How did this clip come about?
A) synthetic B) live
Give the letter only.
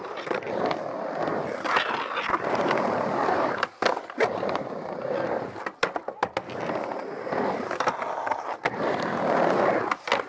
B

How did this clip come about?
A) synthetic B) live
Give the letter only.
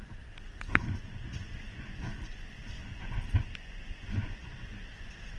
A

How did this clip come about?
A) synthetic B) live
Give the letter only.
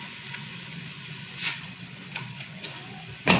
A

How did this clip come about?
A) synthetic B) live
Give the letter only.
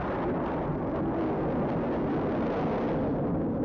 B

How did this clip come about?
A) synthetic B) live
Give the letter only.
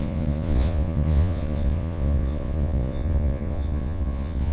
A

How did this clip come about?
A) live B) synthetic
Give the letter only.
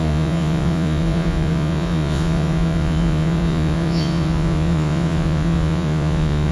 B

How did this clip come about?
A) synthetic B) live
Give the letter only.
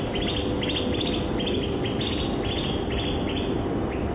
B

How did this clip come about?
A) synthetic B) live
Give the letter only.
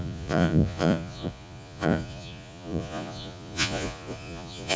A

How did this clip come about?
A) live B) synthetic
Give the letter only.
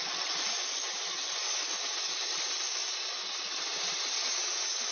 A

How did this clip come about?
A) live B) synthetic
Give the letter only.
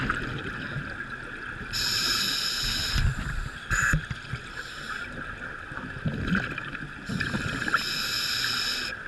A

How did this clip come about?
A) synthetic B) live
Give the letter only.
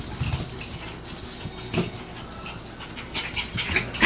B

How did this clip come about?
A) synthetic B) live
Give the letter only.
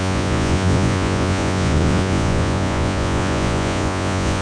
A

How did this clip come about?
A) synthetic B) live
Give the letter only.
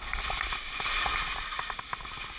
B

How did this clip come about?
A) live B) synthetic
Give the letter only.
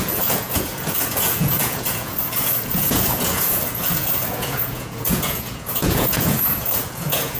B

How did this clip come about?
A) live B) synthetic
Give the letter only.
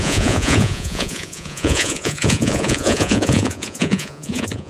B